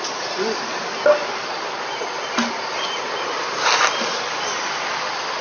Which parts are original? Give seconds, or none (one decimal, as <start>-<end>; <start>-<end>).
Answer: 0.0-5.4